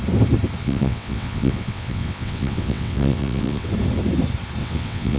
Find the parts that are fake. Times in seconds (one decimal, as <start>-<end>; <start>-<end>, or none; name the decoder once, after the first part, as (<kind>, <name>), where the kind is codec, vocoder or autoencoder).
0.6-3.7 (vocoder, WaveNeXt); 4.6-5.2